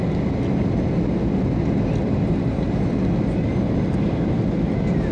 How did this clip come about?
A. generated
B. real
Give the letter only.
B